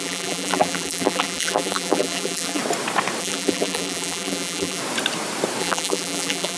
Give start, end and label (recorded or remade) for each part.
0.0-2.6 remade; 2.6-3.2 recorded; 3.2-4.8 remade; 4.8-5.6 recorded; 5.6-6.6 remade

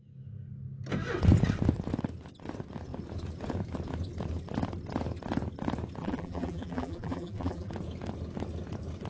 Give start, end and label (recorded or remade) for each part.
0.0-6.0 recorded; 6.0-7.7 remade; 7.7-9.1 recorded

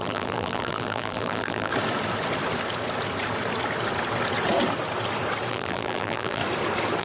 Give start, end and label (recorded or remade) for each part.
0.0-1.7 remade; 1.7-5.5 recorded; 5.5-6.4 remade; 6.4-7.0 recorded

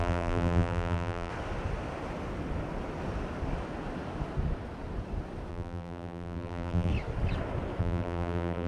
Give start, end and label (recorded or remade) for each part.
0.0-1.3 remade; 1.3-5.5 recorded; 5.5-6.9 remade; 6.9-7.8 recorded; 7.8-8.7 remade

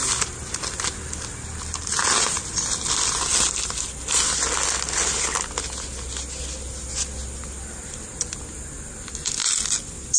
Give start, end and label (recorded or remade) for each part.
0.0-10.2 recorded

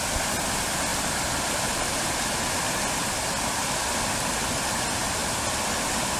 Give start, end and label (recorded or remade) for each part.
0.0-6.2 recorded

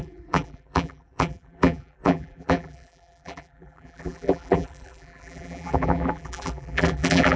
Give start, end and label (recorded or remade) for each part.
0.0-7.4 remade